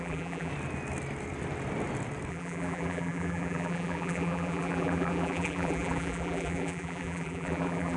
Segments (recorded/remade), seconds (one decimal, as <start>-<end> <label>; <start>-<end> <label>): 0.0-0.5 remade; 0.5-2.3 recorded; 2.3-8.0 remade